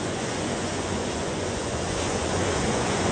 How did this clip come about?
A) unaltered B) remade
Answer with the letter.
B